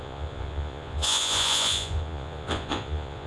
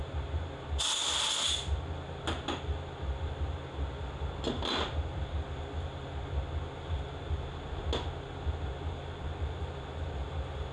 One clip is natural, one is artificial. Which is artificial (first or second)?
first